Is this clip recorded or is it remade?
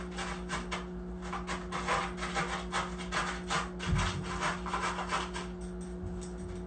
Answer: recorded